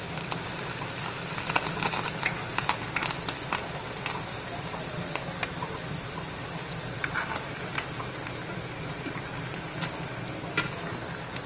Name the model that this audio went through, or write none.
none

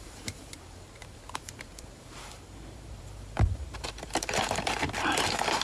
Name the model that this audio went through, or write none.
vocoder, BigVGAN v2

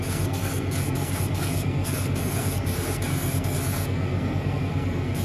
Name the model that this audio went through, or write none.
codec, SNAC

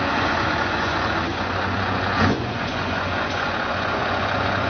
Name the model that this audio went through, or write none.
vocoder, Vocos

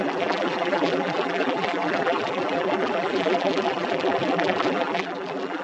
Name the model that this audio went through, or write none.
vocoder, BigVGAN v2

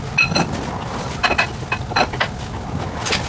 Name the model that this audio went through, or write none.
none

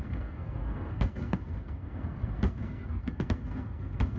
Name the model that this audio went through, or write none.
codec, SNAC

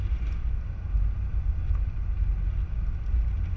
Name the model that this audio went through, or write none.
none